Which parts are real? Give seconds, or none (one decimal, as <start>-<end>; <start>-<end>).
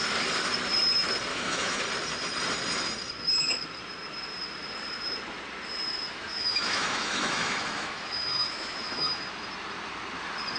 0.0-1.3; 1.8-6.1; 9.2-10.6